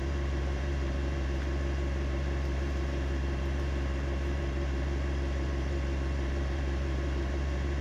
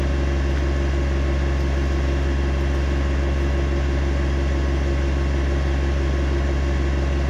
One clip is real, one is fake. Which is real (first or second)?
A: second